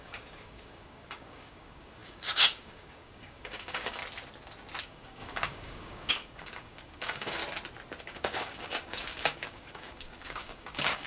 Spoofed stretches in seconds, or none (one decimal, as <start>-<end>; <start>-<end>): 0.0-4.0; 4.8-7.4; 8.0-11.1